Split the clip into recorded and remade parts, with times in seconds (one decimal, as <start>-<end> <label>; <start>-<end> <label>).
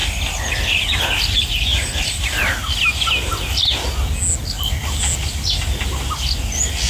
0.0-1.7 recorded; 1.7-2.4 remade; 2.4-6.9 recorded